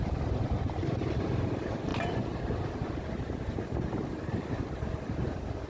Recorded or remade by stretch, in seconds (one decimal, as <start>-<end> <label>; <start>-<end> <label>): 0.0-5.7 remade